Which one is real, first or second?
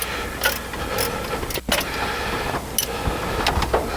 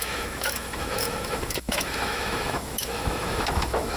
first